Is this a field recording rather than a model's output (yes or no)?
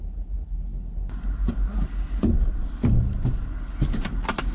yes